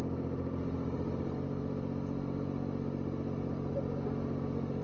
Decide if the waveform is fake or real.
real